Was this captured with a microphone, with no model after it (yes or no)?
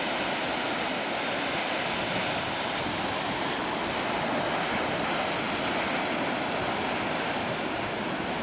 yes